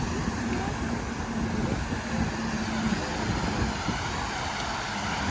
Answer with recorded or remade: recorded